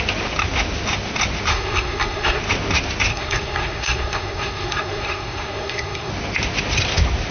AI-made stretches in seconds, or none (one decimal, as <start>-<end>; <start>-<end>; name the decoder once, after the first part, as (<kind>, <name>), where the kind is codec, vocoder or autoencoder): 1.5-2.4 (codec, SNAC); 3.1-6.1